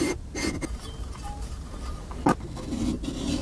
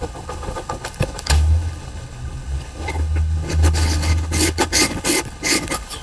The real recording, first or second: first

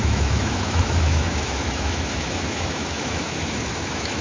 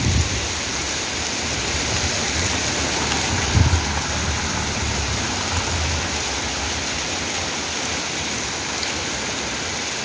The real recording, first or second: second